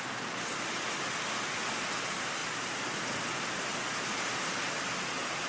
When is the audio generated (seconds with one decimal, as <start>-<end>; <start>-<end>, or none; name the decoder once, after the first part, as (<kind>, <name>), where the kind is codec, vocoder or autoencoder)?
none

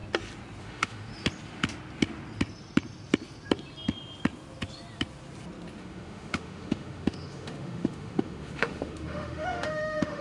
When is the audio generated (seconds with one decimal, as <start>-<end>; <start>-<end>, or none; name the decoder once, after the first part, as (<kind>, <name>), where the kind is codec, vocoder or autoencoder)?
0.6-1.1 (autoencoder, DAC-VAE); 5.8-10.2

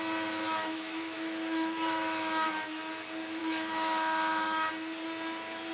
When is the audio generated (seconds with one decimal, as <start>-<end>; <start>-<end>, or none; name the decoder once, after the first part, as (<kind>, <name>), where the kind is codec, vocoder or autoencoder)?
0.6-2.8 (autoencoder, DAC-VAE); 3.4-4.7

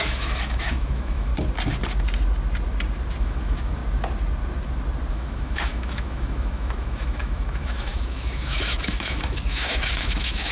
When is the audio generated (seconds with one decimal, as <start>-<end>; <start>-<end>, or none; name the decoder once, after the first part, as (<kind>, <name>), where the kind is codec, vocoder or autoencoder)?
0.0-1.3 (autoencoder, DAC-VAE); 3.2-3.8; 5.1-10.5

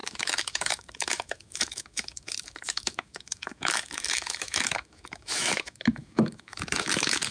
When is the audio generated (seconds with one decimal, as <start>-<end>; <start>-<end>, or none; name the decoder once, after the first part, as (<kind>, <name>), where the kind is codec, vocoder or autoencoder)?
0.0-7.3 (autoencoder, DAC-VAE)